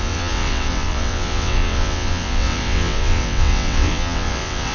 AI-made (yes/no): yes